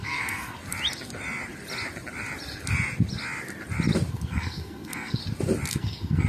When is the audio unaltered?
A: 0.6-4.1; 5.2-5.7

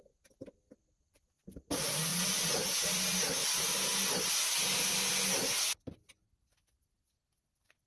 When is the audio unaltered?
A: 0.0-7.9

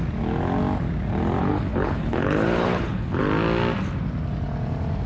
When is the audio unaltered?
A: 0.0-1.4; 3.2-5.1

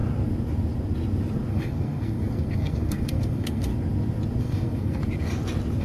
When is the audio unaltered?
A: 0.0-1.5; 3.7-4.4; 5.0-5.8

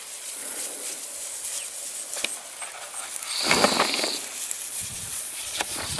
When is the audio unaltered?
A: 1.1-4.7

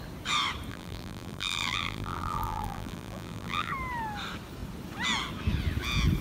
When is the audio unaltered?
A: 0.0-0.7; 3.7-6.2

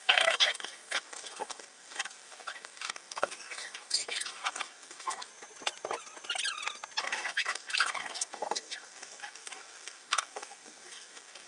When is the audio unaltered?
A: 5.3-7.0

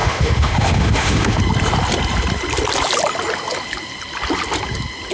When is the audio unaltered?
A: 1.4-5.1